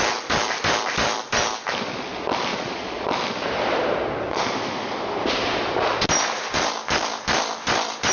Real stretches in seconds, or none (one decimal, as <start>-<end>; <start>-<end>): 0.0-2.5; 3.0-8.1